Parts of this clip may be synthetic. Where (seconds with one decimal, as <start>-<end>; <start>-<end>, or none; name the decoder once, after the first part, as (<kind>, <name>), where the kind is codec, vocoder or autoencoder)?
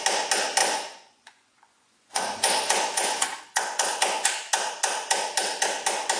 0.6-4.3 (vocoder, Vocos)